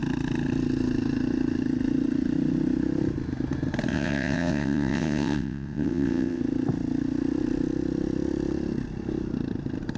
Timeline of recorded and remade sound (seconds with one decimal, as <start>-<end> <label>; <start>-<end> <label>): 0.0-3.9 recorded; 3.9-6.4 remade; 6.4-10.0 recorded